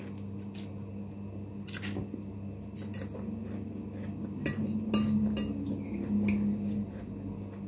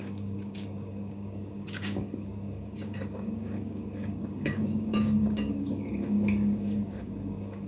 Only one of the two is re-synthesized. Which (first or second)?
second